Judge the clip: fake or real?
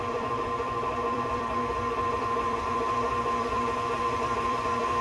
fake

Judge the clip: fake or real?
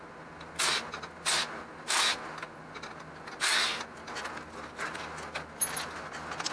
real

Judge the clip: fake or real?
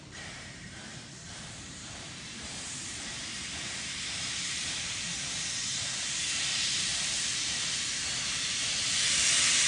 fake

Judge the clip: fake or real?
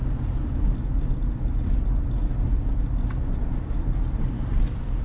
real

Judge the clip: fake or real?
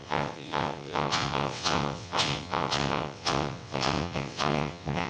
fake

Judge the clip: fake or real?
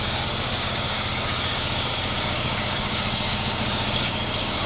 fake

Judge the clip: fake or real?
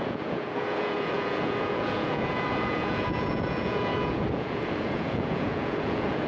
fake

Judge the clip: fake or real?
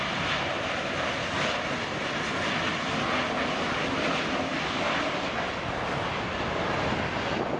real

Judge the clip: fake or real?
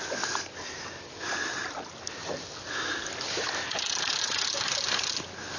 fake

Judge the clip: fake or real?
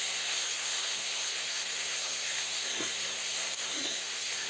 fake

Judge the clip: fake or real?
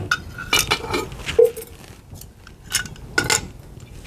real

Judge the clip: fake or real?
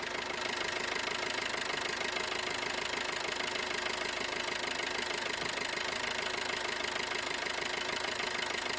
real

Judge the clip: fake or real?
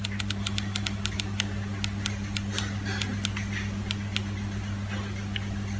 real